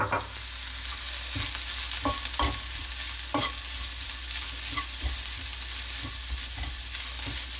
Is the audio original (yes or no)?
yes